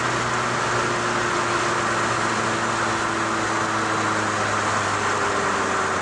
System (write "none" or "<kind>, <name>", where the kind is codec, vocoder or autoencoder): none